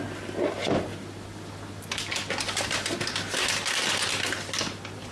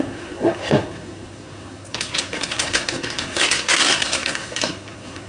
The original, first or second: first